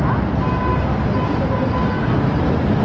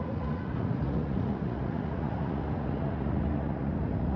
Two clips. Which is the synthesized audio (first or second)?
second